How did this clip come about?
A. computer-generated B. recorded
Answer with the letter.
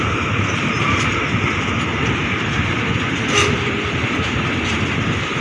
A